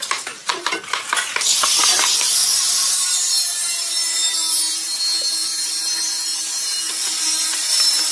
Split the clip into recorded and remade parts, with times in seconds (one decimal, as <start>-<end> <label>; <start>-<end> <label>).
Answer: 0.0-8.1 recorded